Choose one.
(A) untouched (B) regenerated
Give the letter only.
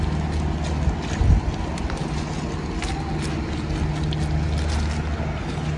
A